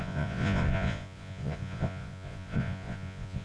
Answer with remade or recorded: remade